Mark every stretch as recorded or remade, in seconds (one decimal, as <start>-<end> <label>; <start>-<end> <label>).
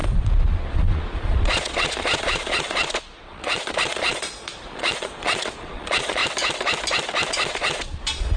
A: 0.0-6.2 remade; 6.2-7.3 recorded; 7.3-8.4 remade